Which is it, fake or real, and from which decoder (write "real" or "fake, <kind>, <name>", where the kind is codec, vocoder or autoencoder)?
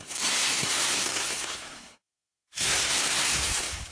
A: fake, codec, SNAC